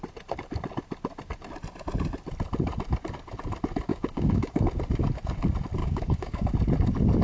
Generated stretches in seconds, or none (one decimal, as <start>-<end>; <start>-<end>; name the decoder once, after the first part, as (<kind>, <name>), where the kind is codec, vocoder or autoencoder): 3.9-4.6 (codec, DAC); 5.8-6.5